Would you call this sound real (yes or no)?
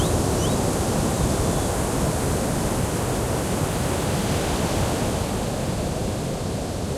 yes